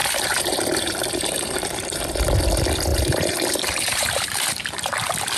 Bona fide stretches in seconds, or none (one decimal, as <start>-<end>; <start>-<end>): 2.0-2.9; 4.9-5.4